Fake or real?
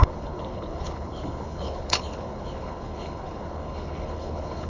fake